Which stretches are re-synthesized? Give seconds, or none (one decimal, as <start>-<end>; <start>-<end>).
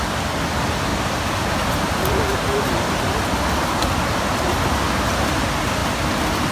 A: 0.9-1.5